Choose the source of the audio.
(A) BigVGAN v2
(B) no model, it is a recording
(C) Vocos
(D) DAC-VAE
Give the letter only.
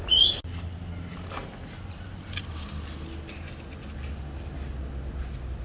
B